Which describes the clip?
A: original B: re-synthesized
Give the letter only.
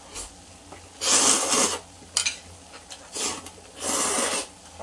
A